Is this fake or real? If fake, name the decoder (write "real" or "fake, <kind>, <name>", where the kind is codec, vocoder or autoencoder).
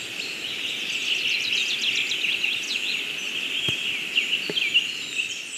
real